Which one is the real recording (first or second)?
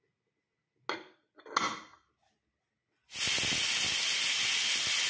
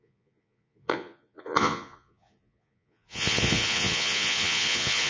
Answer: first